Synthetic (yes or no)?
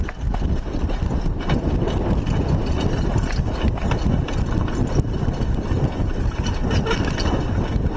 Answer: no